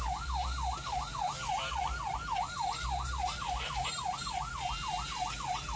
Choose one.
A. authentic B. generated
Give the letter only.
A